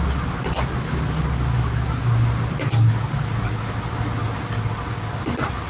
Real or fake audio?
real